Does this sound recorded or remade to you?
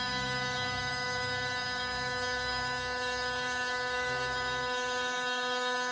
remade